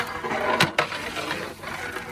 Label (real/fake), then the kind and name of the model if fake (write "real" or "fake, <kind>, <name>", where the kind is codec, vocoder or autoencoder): real